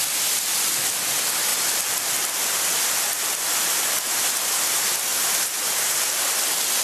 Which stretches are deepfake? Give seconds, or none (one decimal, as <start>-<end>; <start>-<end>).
5.1-5.9